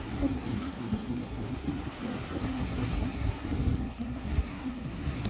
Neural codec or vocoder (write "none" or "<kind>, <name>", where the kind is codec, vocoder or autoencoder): codec, SNAC